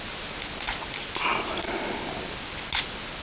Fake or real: real